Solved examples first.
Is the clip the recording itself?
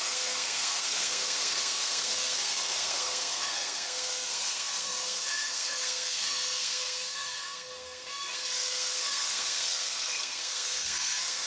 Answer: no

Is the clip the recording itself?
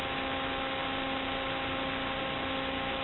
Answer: yes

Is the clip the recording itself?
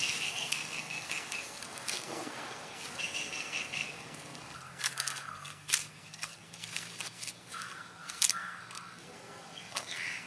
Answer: no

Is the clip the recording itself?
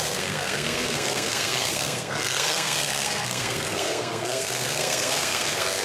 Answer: no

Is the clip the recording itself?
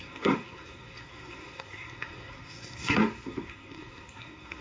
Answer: no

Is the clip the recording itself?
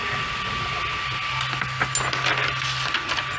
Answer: yes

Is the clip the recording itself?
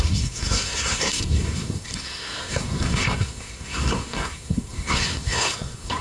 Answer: no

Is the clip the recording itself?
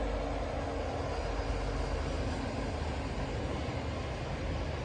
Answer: yes